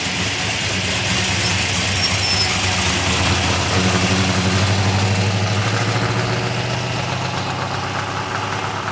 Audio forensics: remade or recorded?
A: recorded